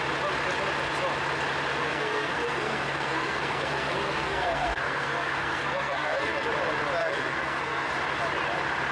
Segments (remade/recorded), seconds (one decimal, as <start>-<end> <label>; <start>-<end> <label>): 0.0-1.7 recorded; 1.7-6.5 remade; 6.5-7.0 recorded; 7.0-7.9 remade; 7.9-8.9 recorded

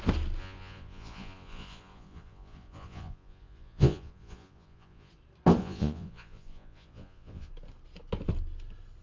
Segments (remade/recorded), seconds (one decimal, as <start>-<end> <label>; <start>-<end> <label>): 0.0-0.4 recorded; 0.4-5.1 remade; 5.1-5.6 recorded; 5.6-7.5 remade; 7.5-9.0 recorded

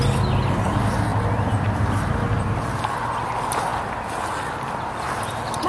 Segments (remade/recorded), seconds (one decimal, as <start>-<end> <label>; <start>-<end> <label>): 0.0-5.7 recorded

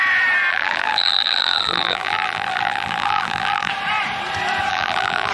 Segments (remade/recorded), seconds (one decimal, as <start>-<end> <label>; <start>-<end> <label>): 0.0-0.5 recorded; 0.5-3.7 remade; 3.7-4.7 recorded; 4.7-5.3 remade

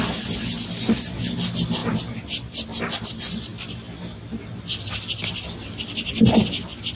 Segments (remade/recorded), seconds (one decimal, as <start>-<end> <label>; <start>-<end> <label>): 0.0-6.9 recorded